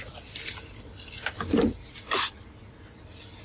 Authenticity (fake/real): real